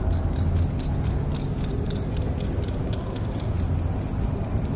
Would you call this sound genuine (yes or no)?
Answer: yes